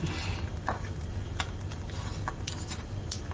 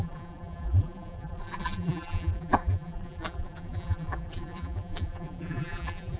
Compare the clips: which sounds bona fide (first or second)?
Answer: first